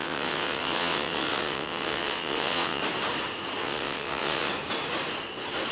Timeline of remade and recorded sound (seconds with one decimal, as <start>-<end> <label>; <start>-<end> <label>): 0.0-2.8 remade; 2.8-3.6 recorded; 3.6-4.5 remade; 4.5-5.7 recorded